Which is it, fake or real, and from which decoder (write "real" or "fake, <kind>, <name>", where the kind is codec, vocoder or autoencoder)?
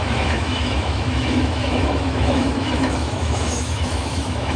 fake, autoencoder, DAC-VAE